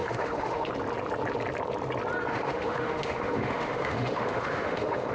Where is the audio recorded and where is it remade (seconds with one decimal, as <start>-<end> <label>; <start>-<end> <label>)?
0.0-0.7 remade; 0.7-2.3 recorded; 2.3-5.1 remade